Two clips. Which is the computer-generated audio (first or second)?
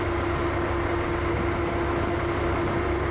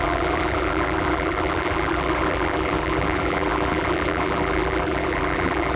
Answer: second